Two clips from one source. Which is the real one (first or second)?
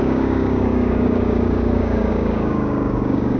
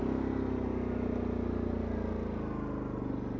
second